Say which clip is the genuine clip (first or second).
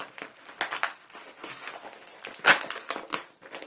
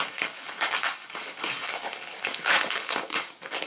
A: first